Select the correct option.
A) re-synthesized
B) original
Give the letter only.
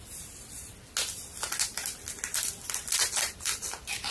B